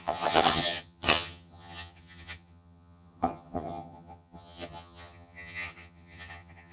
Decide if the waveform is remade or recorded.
remade